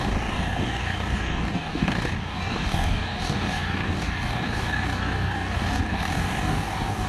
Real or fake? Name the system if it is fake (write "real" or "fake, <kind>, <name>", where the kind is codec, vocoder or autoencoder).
fake, codec, DAC